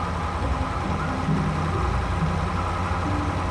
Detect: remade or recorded recorded